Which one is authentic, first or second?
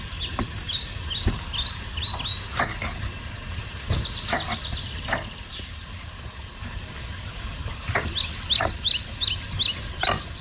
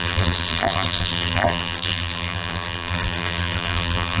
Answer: first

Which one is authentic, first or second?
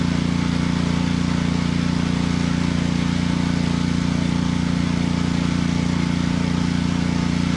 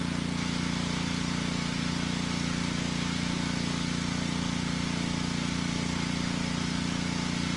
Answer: first